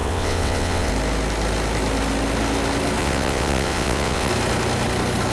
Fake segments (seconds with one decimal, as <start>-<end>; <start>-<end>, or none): 0.0-0.9; 3.0-4.3